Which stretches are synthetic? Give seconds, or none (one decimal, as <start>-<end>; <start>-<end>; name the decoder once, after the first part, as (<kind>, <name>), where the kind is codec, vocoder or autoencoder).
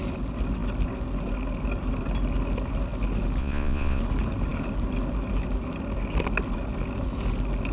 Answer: 3.4-4.0 (vocoder, Vocos)